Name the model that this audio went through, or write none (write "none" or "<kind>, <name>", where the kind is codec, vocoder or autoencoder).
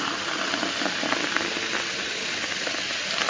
none